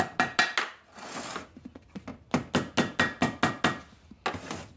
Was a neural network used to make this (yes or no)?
no